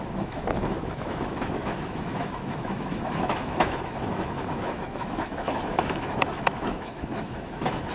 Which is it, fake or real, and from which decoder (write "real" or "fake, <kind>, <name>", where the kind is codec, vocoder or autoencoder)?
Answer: fake, autoencoder, DAC-VAE